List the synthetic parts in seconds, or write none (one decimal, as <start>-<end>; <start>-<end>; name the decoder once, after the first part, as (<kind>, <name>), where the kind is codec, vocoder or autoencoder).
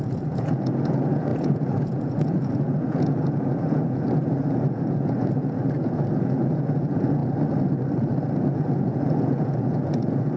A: 0.0-7.2 (vocoder, Vocos); 8.0-10.4